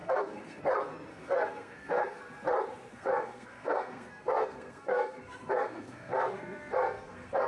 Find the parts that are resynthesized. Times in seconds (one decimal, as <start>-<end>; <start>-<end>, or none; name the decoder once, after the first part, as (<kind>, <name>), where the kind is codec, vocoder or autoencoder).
0.0-0.6 (codec, SNAC); 1.1-2.2; 2.9-7.5